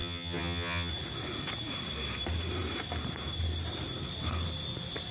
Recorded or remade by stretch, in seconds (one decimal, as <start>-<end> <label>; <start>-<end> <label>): 0.0-0.9 remade; 0.9-5.1 recorded